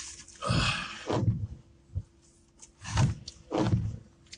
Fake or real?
real